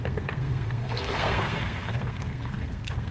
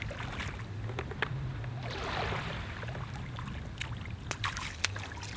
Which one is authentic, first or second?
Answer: second